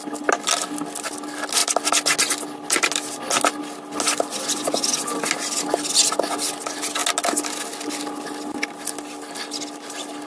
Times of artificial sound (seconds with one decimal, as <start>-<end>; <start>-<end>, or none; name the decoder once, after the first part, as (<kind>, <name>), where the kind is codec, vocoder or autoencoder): none